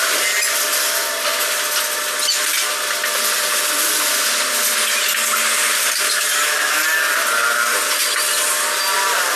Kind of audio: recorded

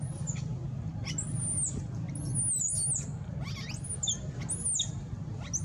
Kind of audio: recorded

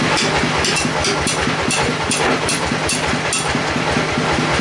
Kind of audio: recorded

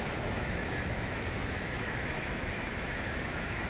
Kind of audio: remade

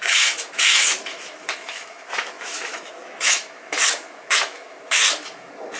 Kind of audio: remade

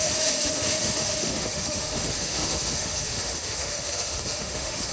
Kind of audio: remade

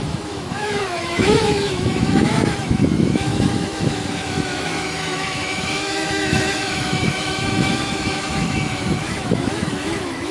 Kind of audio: remade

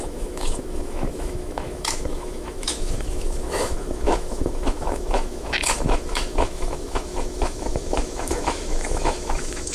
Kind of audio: remade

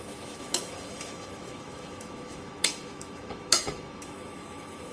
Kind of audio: remade